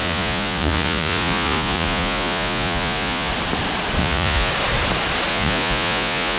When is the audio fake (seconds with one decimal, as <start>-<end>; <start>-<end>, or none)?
0.0-3.3; 4.0-4.5; 5.3-6.4